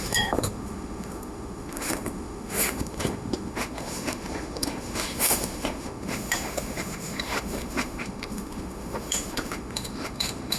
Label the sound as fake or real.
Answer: fake